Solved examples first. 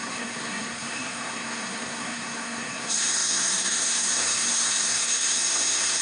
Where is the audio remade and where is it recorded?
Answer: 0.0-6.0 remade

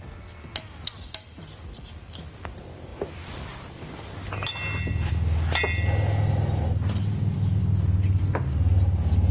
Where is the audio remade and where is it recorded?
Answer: 0.0-9.3 recorded

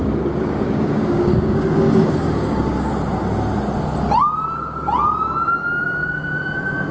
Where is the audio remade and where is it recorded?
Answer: 0.0-2.9 remade; 2.9-6.9 recorded

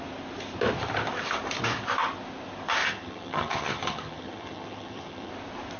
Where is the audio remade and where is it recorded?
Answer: 0.0-2.8 recorded; 2.8-5.3 remade; 5.3-5.8 recorded